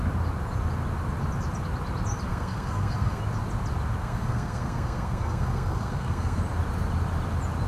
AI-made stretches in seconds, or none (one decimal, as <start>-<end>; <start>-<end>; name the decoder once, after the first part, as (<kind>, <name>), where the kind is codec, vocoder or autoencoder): 2.3-3.2 (codec, SNAC); 4.0-6.4